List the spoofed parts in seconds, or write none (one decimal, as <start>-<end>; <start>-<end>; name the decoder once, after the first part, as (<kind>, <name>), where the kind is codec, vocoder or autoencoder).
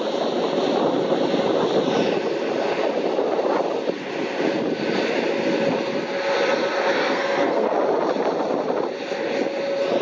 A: 7.0-7.7 (codec, SNAC)